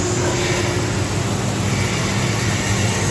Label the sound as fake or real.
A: real